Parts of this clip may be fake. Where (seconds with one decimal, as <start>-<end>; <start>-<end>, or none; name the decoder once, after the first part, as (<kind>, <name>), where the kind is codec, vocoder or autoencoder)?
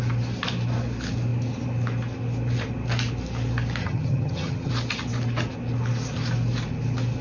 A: 3.8-4.7 (vocoder, HiFi-GAN)